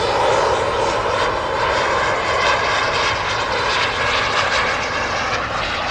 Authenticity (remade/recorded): recorded